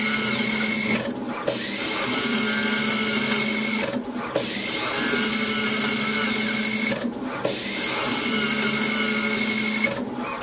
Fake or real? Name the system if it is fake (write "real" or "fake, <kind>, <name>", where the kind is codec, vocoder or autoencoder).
real